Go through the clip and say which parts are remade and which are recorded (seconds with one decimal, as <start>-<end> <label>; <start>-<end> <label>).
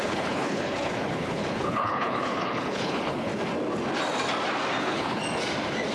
0.0-3.3 remade; 3.3-4.8 recorded; 4.8-5.2 remade; 5.2-5.9 recorded